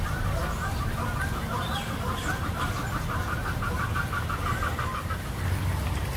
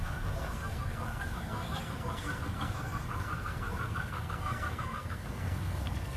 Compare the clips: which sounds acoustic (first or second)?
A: first